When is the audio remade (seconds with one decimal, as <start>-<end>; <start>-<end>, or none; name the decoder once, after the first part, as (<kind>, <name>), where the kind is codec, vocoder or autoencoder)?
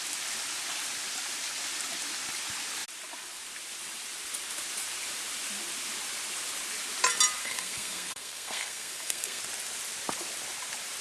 7.4-9.4 (codec, SNAC)